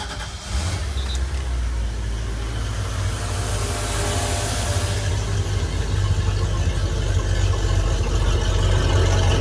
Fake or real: real